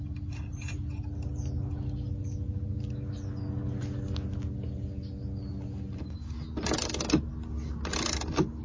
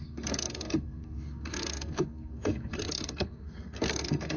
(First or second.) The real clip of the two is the first